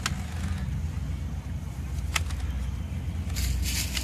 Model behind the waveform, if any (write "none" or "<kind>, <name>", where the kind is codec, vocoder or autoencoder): none